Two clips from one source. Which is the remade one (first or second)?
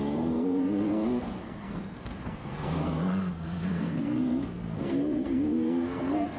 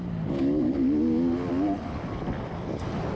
first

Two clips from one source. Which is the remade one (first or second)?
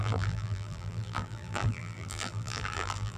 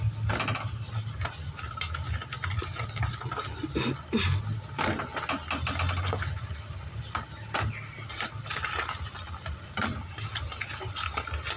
first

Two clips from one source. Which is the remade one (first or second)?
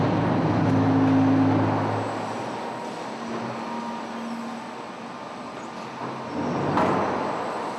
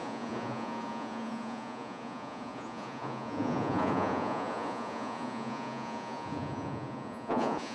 second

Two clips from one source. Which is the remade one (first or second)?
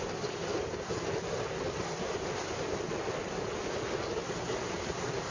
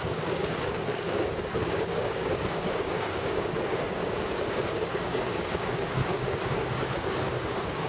second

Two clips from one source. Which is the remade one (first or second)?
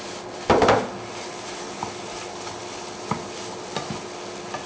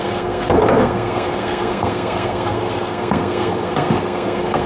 second